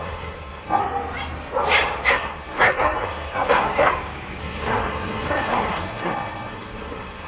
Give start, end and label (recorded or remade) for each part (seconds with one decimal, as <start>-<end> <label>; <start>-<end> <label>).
0.0-0.8 remade; 0.8-2.1 recorded; 2.1-3.9 remade; 3.9-4.4 recorded; 4.4-7.3 remade